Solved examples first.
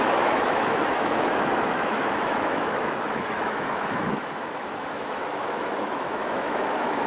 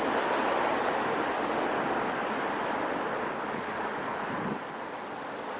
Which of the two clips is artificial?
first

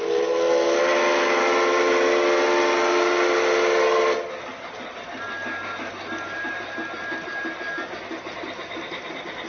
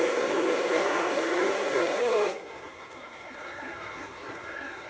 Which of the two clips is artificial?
second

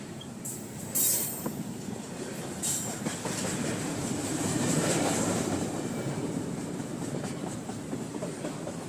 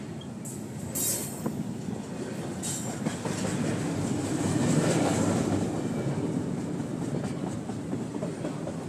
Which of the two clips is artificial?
first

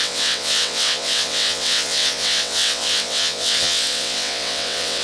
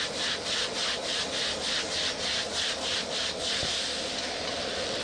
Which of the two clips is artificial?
first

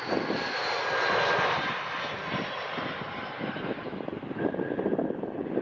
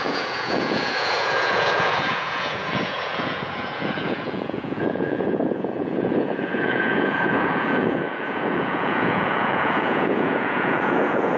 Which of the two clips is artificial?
second